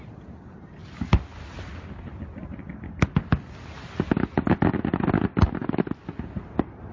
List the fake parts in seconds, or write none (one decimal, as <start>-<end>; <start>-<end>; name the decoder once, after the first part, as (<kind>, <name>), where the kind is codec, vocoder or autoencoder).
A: none